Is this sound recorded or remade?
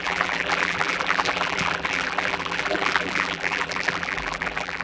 remade